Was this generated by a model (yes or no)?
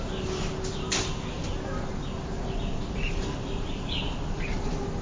no